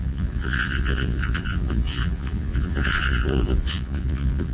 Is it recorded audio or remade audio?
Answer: remade